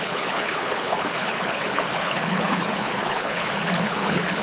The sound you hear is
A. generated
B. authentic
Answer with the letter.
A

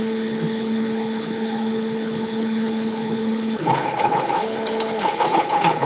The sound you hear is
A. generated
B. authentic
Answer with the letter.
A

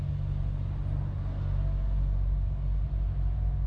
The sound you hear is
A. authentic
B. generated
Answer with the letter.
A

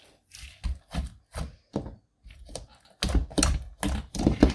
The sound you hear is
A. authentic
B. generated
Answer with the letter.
A